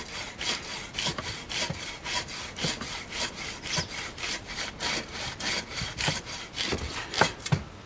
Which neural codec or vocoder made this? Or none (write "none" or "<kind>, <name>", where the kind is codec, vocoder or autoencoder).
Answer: none